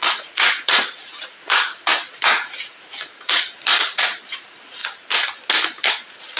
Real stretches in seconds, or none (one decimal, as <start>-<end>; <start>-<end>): 4.8-5.9